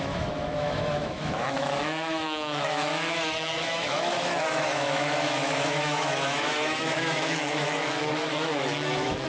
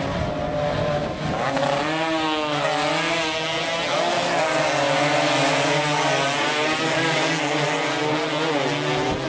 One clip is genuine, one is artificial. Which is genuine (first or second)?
second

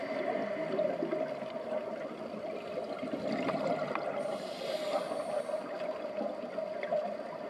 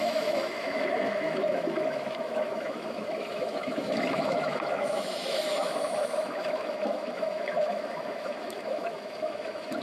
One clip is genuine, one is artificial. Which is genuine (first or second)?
first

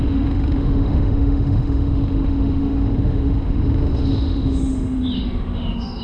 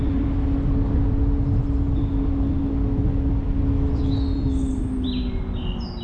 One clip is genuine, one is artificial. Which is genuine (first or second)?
second